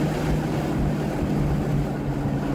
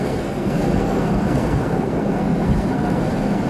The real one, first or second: first